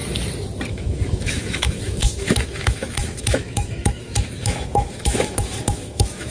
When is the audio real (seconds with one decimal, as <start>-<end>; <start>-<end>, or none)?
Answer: 0.0-0.7